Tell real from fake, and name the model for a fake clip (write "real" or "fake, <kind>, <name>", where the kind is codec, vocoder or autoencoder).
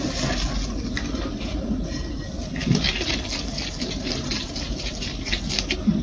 real